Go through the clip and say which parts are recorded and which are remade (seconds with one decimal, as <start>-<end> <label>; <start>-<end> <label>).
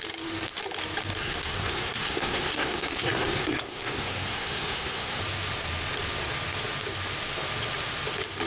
0.0-1.2 recorded; 1.2-5.2 remade; 5.2-8.5 recorded